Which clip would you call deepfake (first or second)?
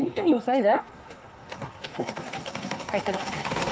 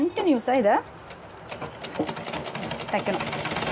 first